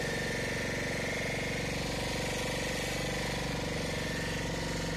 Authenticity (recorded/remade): recorded